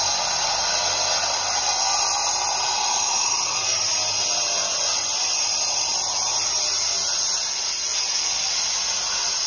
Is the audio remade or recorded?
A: recorded